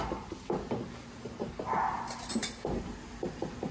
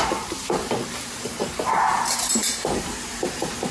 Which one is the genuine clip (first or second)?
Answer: first